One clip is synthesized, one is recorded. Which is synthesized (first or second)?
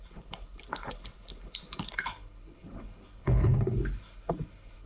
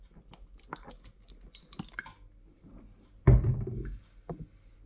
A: first